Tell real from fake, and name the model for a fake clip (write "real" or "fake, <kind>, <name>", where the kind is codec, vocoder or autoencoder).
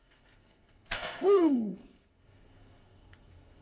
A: fake, codec, SNAC